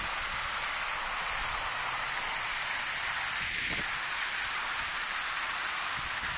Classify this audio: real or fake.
real